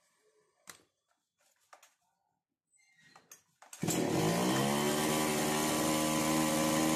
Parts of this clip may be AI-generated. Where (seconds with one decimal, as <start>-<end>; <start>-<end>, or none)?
none